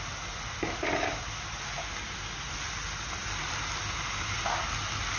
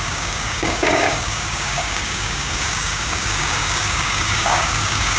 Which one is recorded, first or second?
first